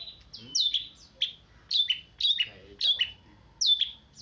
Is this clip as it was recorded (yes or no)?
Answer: yes